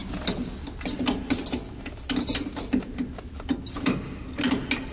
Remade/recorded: recorded